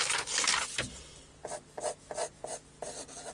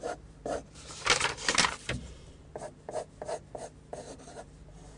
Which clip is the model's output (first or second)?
second